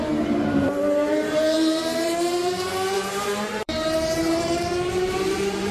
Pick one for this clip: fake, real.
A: fake